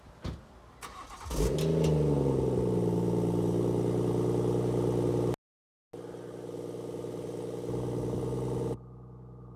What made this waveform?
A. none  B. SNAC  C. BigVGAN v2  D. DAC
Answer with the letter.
A